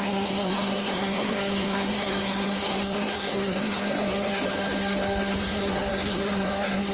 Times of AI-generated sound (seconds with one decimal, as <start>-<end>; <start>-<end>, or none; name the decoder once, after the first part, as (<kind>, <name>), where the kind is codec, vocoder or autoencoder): 0.0-4.3 (codec, SNAC); 5.4-6.9